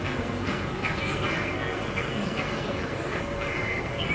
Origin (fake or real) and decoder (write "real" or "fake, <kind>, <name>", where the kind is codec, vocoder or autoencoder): fake, codec, SNAC